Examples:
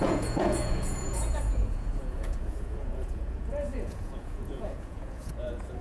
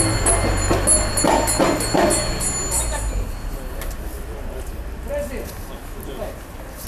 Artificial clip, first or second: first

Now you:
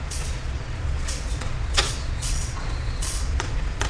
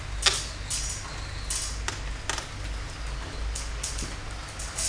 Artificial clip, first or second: first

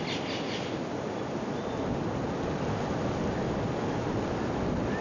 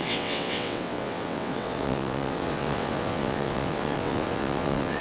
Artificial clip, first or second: second